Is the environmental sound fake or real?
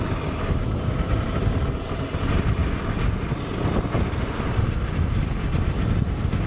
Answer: real